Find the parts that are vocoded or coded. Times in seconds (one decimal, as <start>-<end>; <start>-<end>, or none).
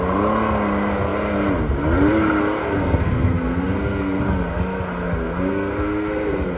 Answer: 2.6-4.2; 5.5-6.6